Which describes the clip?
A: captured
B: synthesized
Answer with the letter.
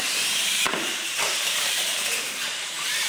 B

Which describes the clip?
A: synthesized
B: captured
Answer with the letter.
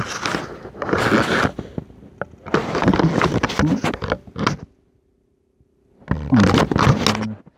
B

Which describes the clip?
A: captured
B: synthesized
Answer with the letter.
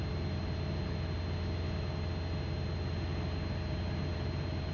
A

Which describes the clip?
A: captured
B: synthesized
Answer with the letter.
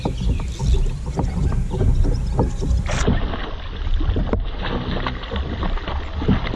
A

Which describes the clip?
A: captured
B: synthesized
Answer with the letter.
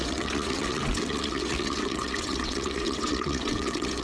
B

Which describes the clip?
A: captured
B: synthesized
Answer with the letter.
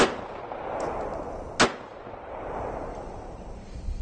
A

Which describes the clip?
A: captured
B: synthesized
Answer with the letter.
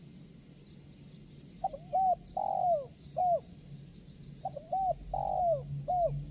A